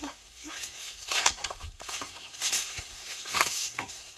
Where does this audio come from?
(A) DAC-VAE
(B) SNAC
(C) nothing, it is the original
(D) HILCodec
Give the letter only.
B